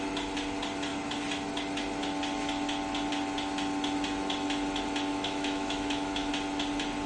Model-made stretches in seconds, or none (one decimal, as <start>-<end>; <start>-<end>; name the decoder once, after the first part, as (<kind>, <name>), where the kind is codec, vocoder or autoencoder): 5.1-6.3 (autoencoder, DAC-VAE)